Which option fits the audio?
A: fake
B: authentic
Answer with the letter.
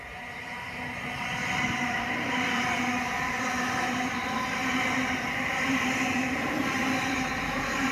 A